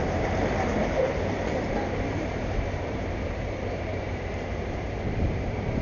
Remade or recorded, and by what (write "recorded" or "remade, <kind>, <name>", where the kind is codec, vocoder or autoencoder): remade, vocoder, BigVGAN v2